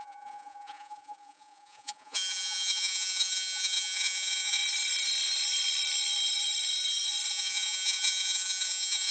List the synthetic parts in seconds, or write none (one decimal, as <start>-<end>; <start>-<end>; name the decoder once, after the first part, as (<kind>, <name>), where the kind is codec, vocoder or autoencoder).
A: 0.0-4.6 (vocoder, Vocos); 7.3-9.1